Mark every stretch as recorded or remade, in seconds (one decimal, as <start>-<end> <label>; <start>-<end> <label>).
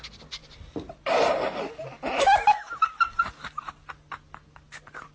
0.0-5.1 recorded